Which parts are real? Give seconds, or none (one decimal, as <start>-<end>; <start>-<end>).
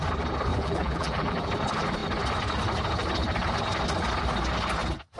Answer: 0.0-0.5; 1.5-5.2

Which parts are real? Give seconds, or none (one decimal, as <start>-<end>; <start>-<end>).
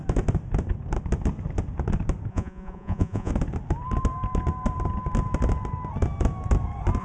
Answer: 0.0-2.3; 3.3-7.0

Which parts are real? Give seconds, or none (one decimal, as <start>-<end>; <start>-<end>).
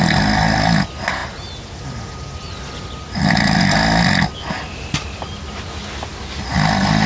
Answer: 0.0-7.1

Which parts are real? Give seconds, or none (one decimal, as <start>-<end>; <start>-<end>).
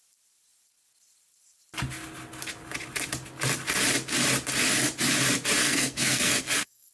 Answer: 0.0-5.6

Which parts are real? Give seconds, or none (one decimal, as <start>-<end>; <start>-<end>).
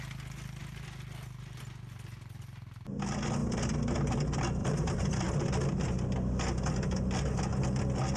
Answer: 0.0-4.6; 5.3-8.2